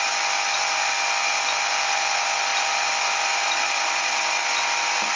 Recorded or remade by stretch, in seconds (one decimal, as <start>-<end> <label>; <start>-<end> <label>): 0.0-5.2 recorded